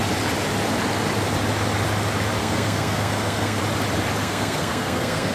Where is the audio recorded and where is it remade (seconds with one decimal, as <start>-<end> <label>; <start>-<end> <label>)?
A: 0.0-2.4 recorded; 2.4-3.6 remade; 3.6-4.2 recorded; 4.2-5.3 remade